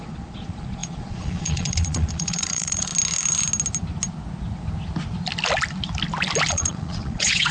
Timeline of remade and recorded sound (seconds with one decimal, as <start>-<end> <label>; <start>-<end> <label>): 0.0-2.9 remade; 2.9-6.5 recorded; 6.5-7.5 remade